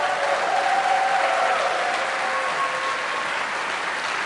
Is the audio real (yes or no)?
yes